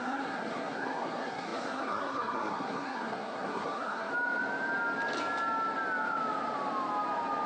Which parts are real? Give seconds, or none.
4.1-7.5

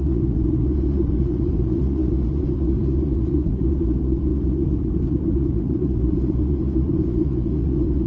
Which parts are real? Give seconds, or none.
none

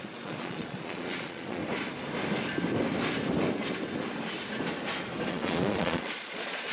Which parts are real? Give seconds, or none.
1.6-5.3